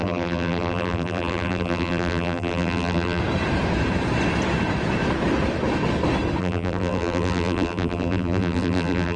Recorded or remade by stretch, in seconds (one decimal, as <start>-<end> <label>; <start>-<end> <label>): 0.0-3.2 remade; 3.2-6.4 recorded; 6.4-9.2 remade